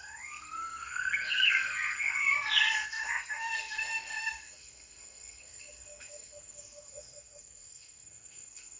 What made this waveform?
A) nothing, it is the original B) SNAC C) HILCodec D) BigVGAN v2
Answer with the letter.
B